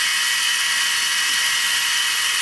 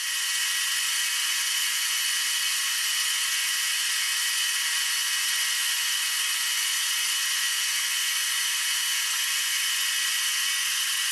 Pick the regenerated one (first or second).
second